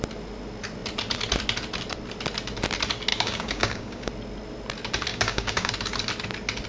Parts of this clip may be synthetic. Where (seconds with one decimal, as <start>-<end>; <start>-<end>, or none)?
3.1-4.1; 5.1-5.7

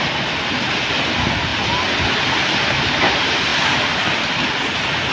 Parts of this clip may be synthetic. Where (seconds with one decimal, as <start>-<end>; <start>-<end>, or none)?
none

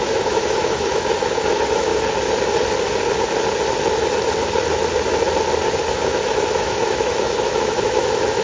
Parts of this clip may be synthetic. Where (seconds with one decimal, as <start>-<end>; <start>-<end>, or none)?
0.0-1.9; 5.9-8.4